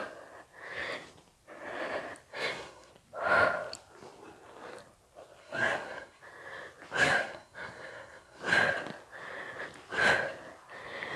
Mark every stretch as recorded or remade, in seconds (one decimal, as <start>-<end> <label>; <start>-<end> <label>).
0.0-2.3 recorded; 2.3-2.9 remade; 2.9-5.4 recorded; 5.4-6.2 remade; 6.2-7.0 recorded; 7.0-8.4 remade; 8.4-11.2 recorded